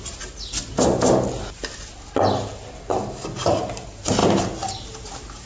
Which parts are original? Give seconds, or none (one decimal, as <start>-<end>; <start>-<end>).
0.0-5.5